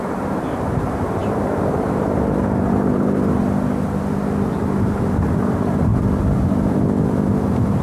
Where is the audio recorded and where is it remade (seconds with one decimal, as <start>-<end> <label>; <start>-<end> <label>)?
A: 0.0-3.4 remade; 3.4-4.3 recorded; 4.3-5.9 remade; 5.9-6.4 recorded; 6.4-7.8 remade